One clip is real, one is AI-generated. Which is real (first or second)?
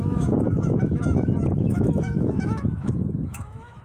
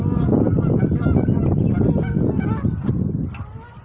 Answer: second